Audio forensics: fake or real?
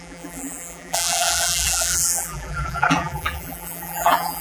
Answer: fake